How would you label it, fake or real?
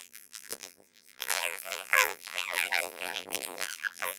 fake